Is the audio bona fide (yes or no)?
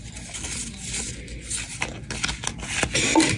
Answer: yes